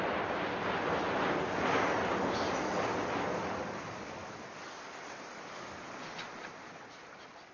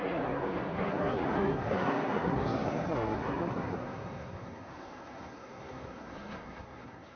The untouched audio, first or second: first